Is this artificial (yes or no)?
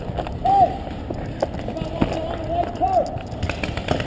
no